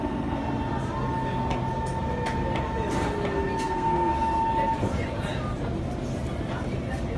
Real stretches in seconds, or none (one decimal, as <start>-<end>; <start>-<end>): 0.4-3.6; 4.1-7.2